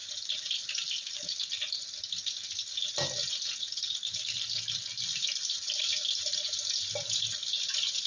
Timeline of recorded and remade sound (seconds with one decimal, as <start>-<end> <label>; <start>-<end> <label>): 0.0-1.5 remade; 1.5-3.2 recorded; 3.2-6.9 remade; 6.9-8.1 recorded